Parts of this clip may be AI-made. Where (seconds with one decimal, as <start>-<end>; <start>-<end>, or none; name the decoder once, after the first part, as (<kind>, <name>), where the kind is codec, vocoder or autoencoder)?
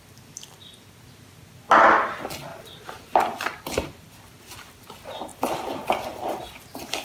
2.5-4.0 (vocoder, BigVGAN v2); 5.3-7.0